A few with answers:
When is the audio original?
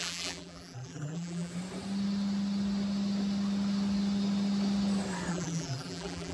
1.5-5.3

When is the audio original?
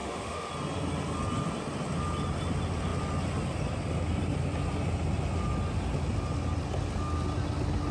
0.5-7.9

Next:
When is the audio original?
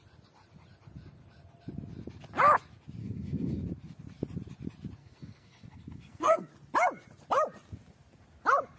0.0-3.0; 3.6-5.0; 6.5-8.8